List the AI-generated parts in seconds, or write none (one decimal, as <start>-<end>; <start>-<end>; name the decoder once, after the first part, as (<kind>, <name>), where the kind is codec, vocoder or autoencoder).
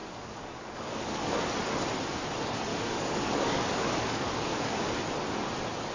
0.0-1.4 (codec, DAC); 2.7-5.0